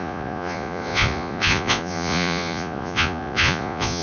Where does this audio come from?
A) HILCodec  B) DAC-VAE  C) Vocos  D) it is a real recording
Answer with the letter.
C